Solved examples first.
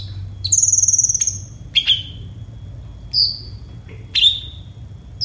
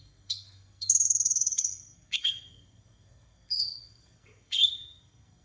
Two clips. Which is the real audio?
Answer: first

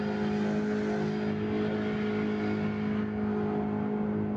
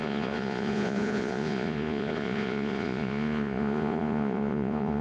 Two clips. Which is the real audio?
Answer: first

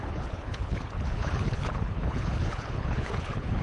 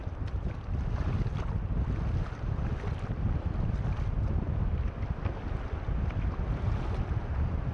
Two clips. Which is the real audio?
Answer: second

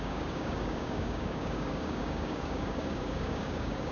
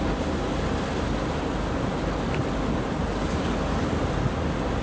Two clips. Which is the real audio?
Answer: second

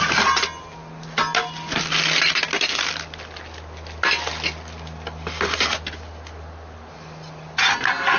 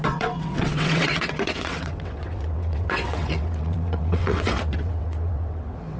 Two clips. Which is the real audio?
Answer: first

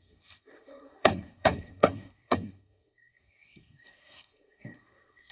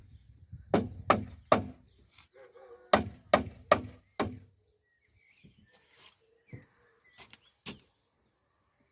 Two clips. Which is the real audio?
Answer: second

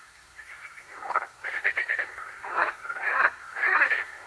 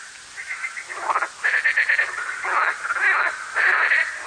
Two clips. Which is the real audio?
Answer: second